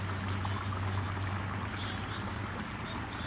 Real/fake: real